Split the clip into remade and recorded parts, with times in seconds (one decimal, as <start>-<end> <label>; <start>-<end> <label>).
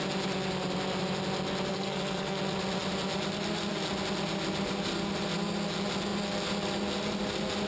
0.0-1.7 recorded; 1.7-2.4 remade; 2.4-7.7 recorded